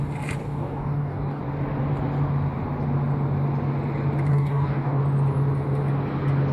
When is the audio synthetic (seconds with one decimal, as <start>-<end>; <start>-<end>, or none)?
0.4-1.4; 4.3-5.0